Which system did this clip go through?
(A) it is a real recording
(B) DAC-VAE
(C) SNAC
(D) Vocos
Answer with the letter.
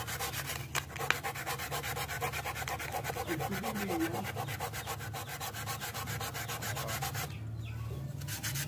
A